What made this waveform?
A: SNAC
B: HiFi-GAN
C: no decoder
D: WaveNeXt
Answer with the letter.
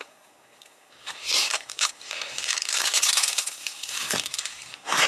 A